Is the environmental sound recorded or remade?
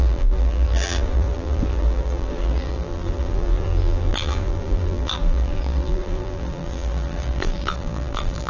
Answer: remade